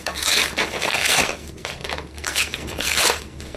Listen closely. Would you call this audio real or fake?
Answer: fake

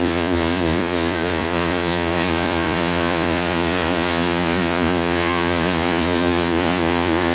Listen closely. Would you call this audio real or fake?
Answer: fake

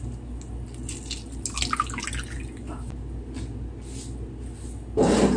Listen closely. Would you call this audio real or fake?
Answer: real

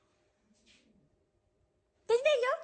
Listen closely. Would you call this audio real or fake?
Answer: real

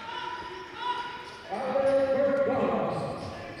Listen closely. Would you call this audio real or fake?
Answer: real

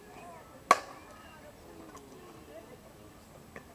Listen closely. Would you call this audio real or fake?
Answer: real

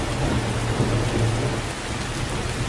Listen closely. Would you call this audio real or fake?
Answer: real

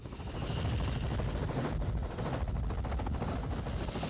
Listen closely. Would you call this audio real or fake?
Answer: real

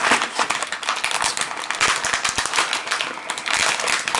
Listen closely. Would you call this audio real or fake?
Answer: real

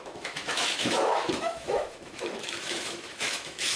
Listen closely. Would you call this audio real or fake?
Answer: fake